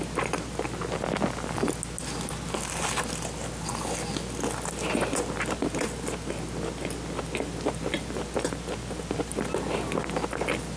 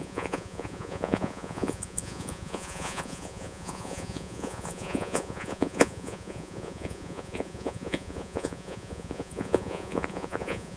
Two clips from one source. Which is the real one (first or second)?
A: first